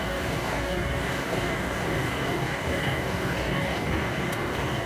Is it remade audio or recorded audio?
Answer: remade